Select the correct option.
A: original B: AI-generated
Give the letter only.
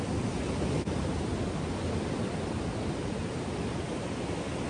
A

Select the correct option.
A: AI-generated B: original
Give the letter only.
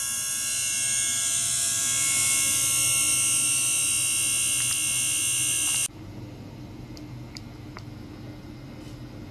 B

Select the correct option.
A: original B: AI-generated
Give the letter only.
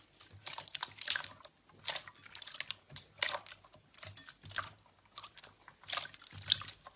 A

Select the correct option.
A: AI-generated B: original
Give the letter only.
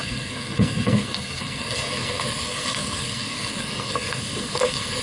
A